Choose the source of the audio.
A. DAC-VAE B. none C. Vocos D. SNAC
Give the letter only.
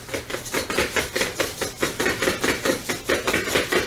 B